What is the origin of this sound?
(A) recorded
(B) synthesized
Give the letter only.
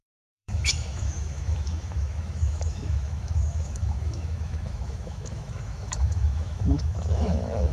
B